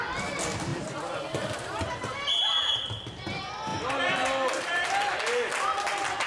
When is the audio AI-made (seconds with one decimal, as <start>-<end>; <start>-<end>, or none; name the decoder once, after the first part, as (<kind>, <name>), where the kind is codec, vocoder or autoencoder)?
none